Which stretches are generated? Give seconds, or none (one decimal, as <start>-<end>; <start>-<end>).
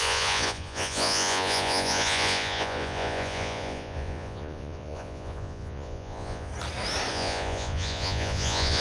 0.0-6.5; 7.1-8.8